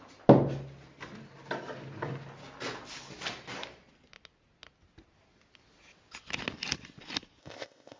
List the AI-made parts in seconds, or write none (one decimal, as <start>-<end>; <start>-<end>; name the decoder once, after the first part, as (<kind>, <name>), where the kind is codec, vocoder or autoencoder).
7.4-8.0 (codec, ZipCodec)